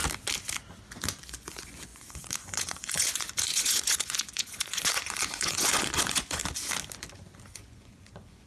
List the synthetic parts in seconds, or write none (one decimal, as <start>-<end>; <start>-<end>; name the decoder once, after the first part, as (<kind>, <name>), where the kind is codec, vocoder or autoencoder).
0.9-6.4 (vocoder, Vocos); 7.5-8.5